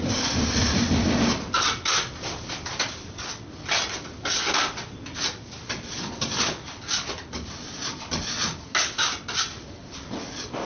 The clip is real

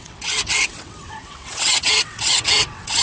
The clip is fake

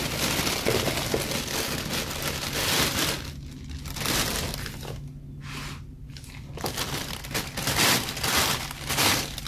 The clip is real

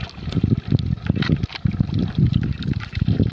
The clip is real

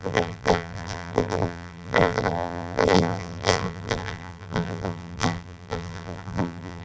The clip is fake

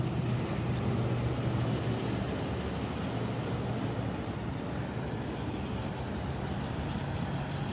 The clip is real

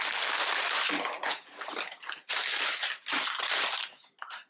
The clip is real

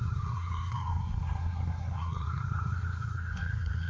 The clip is fake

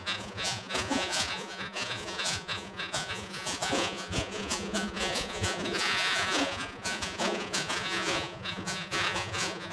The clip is fake